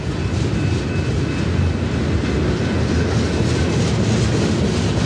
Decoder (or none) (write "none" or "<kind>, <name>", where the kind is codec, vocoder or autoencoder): none